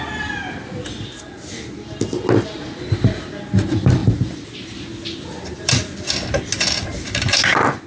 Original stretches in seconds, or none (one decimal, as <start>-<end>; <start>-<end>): 0.0-7.9